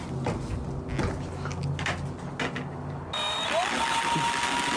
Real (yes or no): yes